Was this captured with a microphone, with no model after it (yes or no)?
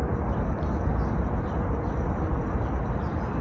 no